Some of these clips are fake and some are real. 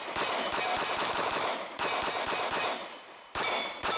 fake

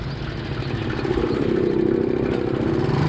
real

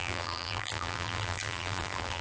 fake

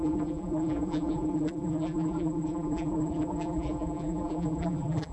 fake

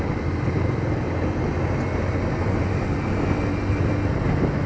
real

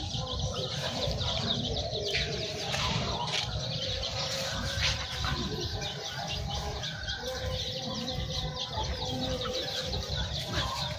fake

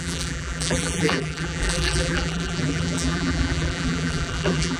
fake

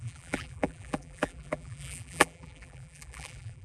fake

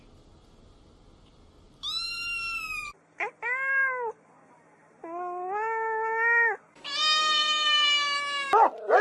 real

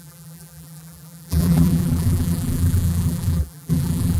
fake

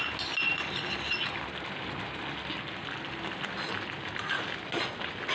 real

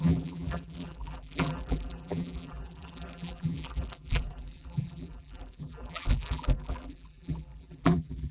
fake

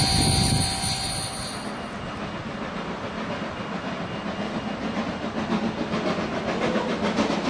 real